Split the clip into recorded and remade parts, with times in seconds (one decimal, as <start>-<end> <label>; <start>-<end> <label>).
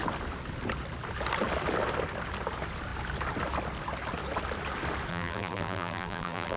0.0-5.1 recorded; 5.1-6.6 remade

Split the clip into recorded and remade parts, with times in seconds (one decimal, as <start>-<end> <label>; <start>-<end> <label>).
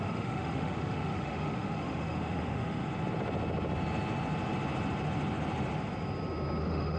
0.0-2.8 remade; 2.8-6.6 recorded; 6.6-7.0 remade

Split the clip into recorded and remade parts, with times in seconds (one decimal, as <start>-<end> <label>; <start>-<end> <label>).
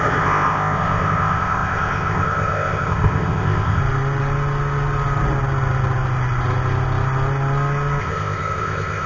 0.0-3.8 remade; 3.8-8.0 recorded; 8.0-9.1 remade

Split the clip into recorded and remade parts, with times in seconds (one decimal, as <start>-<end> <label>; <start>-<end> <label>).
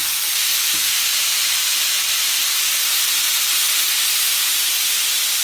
0.0-3.5 remade; 3.5-4.1 recorded; 4.1-5.4 remade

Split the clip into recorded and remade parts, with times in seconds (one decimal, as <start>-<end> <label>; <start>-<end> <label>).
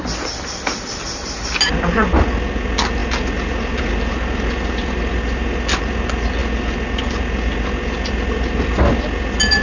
0.0-9.6 recorded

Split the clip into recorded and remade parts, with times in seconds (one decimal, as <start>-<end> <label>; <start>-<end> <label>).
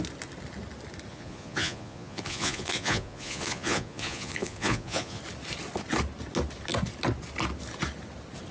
0.0-1.1 recorded; 1.1-5.2 remade; 5.2-8.5 recorded